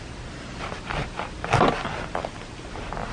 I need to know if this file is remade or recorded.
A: recorded